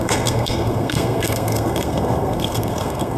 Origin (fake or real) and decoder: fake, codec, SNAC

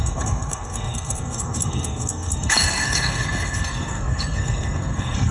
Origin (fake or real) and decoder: fake, codec, SNAC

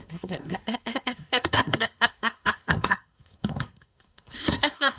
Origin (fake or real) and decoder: fake, codec, SNAC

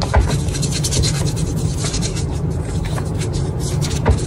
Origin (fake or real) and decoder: fake, vocoder, BigVGAN v2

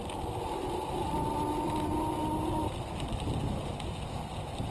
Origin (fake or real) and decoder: real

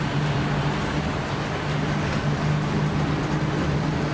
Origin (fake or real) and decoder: real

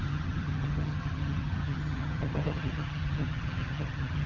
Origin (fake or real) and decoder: fake, vocoder, HiFi-GAN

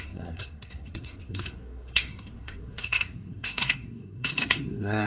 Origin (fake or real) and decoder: fake, codec, SNAC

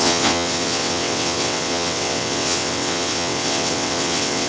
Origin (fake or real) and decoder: fake, vocoder, WaveNeXt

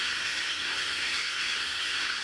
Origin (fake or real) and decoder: fake, codec, SNAC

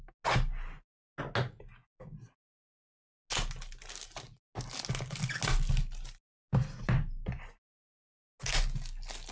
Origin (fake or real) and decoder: real